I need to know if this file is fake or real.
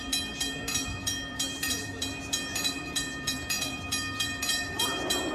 fake